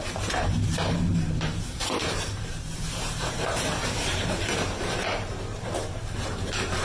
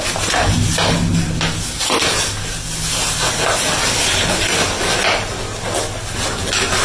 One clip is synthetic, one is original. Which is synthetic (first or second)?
first